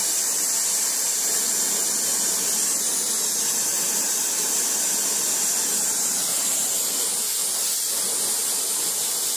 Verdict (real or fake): fake